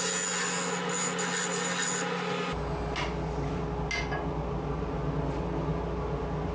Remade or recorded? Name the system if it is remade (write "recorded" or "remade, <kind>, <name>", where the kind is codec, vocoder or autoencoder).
recorded